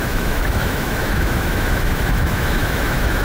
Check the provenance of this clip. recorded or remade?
remade